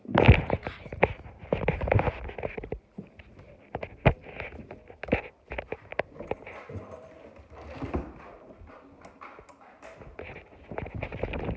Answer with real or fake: real